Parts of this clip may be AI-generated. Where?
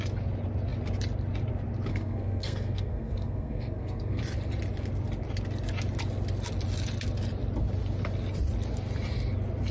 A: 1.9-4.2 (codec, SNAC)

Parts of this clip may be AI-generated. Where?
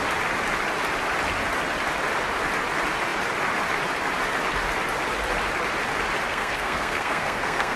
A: 6.3-7.8 (codec, SNAC)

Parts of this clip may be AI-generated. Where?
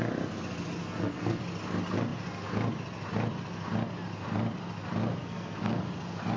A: 0.8-1.4 (codec, SNAC); 5.2-5.8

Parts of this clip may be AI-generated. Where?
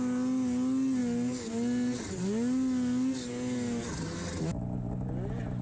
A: none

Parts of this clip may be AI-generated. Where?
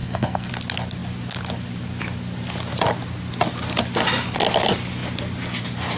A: 0.0-0.5 (codec, SNAC)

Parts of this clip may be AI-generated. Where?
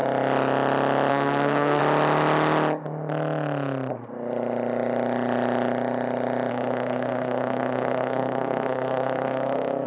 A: 1.1-1.8 (codec, SNAC); 6.5-9.9